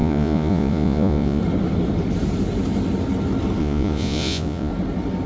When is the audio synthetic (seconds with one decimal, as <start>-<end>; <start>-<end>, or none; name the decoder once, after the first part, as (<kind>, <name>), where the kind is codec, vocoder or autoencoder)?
0.0-1.4 (vocoder, Vocos); 3.6-4.7